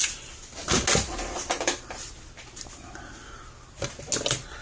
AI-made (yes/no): no